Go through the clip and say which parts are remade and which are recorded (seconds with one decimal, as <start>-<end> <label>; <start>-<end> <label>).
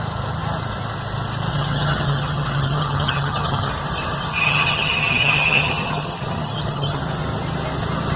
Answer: 0.0-1.5 recorded; 1.5-3.7 remade; 3.7-4.3 recorded; 4.3-7.0 remade; 7.0-8.2 recorded